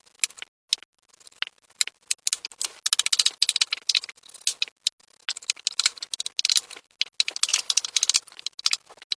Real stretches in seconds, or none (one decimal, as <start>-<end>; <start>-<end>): 0.0-9.2